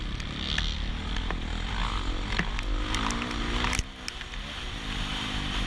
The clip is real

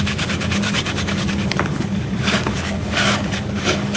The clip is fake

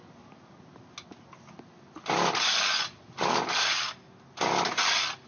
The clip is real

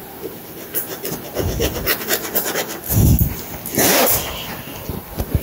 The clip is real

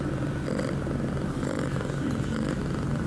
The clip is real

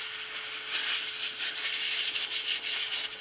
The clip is real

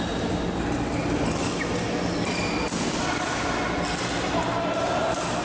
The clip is real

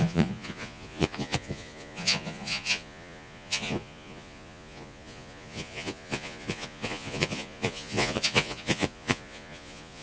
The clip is fake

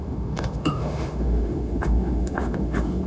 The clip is fake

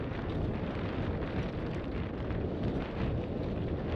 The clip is fake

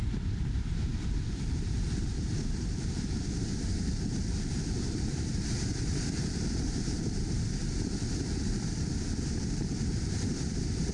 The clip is fake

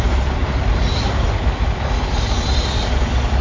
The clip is real